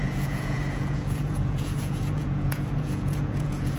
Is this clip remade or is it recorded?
remade